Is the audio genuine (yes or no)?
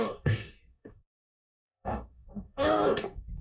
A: no